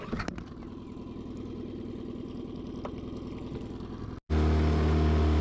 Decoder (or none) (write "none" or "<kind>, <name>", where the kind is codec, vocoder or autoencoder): none